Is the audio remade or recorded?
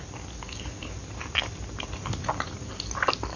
recorded